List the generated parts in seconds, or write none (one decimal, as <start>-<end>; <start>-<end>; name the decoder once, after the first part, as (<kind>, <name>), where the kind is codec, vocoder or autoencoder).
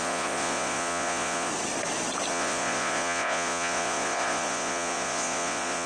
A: 0.0-1.5 (vocoder, Vocos); 2.3-5.9